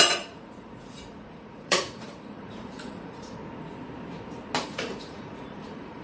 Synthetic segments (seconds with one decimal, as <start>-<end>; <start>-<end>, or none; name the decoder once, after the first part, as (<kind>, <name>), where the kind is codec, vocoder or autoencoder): 0.0-3.4 (vocoder, Vocos); 4.6-6.0